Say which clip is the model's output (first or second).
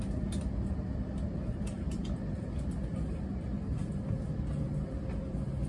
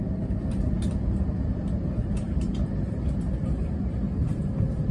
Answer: second